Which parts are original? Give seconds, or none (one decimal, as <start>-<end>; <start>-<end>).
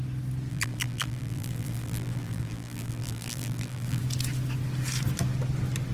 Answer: 0.0-0.5; 4.0-5.9